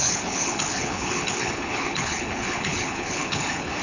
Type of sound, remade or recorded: remade